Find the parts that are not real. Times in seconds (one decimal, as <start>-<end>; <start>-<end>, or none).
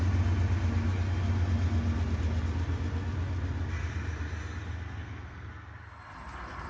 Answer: 5.0-5.5